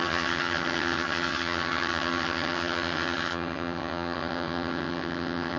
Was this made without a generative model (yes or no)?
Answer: no